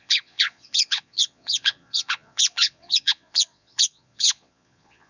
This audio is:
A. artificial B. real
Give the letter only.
A